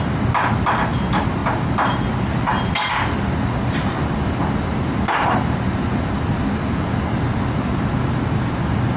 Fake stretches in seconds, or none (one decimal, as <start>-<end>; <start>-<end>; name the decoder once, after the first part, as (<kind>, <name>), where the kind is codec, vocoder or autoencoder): none